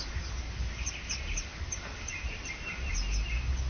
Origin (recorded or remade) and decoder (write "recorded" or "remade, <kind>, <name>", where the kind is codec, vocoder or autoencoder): recorded